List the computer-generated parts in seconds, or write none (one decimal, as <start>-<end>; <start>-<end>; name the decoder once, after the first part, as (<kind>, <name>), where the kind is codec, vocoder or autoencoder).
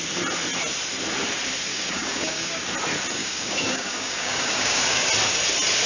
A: 1.7-2.6 (codec, DAC); 3.2-5.1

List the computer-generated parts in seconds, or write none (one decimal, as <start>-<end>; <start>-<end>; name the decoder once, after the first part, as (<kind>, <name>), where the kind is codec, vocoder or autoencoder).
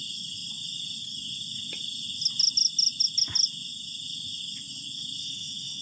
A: 5.2-5.8 (autoencoder, DAC-VAE)